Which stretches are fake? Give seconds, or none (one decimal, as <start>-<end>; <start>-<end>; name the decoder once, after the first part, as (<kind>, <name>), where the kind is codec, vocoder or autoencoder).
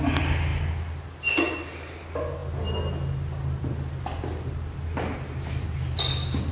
none